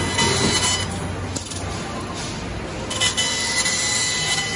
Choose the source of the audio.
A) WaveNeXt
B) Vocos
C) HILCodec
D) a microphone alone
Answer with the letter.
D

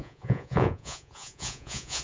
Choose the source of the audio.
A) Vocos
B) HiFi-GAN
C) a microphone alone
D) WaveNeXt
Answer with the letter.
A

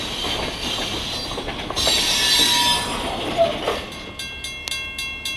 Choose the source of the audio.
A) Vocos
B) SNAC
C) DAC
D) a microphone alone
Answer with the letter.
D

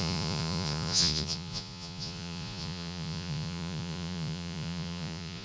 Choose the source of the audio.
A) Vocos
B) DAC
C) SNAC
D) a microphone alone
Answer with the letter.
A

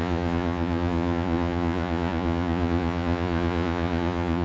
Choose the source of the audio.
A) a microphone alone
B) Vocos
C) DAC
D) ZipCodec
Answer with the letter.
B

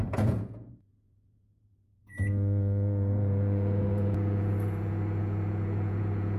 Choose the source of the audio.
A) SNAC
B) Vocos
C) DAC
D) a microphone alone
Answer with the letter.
B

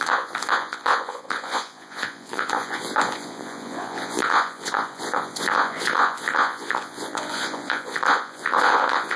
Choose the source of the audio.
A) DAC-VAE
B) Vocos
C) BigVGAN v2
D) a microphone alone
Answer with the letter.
B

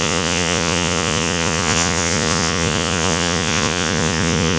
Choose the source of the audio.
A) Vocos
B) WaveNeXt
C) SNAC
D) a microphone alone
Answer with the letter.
A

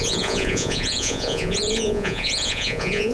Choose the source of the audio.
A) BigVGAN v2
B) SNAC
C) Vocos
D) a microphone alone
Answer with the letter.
C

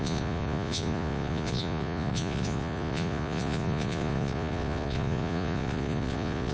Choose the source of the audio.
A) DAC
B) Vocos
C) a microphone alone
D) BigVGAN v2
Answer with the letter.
B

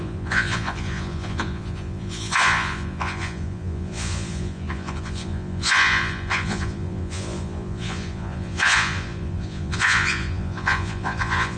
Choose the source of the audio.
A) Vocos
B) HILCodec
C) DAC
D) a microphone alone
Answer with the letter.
A